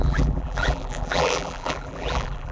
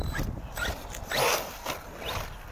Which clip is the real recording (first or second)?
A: second